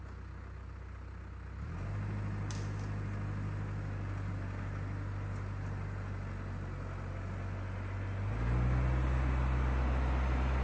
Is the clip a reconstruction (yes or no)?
no